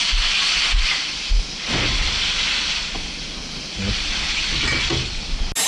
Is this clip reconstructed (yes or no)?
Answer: no